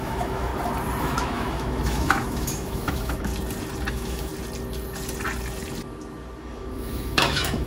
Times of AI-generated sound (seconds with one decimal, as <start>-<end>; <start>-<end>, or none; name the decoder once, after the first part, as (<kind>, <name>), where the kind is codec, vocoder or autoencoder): 0.0-0.5 (autoencoder, DAC-VAE); 1.0-3.3; 3.9-4.3; 6.4-7.7